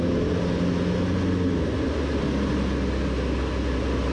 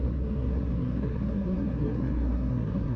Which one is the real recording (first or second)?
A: first